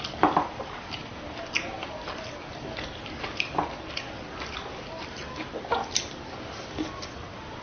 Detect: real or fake real